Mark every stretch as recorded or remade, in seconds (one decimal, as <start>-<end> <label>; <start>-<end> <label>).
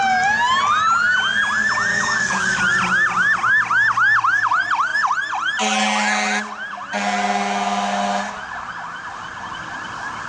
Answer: 0.0-1.9 recorded; 1.9-2.6 remade; 2.6-10.3 recorded